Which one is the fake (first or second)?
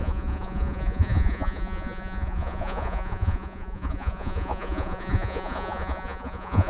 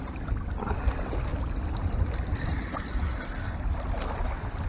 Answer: first